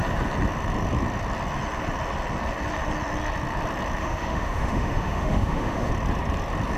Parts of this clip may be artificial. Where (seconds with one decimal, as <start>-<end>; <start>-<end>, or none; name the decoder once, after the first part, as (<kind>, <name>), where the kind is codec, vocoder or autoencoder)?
4.0-5.9 (autoencoder, DAC-VAE)